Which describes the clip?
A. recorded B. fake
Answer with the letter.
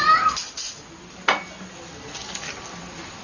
A